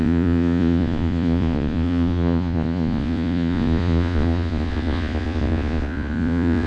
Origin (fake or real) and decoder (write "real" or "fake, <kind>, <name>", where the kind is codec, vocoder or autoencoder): fake, vocoder, Vocos